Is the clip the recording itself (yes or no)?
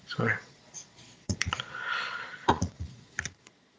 no